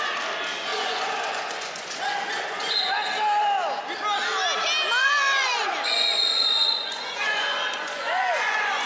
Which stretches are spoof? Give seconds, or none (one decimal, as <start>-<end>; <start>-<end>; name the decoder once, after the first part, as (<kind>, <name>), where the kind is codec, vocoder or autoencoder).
0.7-2.9 (vocoder, Vocos); 5.0-8.9